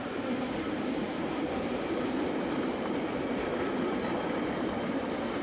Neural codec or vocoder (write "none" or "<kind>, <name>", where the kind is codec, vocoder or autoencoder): vocoder, BigVGAN v2